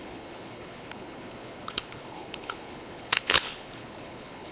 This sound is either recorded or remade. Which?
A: remade